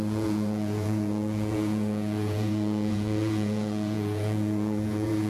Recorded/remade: remade